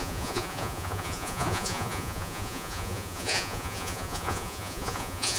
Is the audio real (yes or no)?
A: no